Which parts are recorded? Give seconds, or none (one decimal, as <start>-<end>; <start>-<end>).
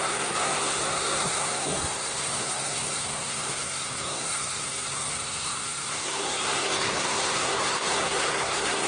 none